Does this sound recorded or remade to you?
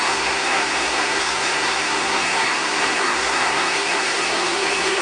remade